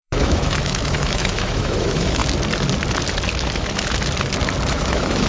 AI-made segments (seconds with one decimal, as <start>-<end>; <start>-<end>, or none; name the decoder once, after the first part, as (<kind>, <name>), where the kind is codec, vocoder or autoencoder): 0.0-2.2 (autoencoder, DAC-VAE); 4.7-5.3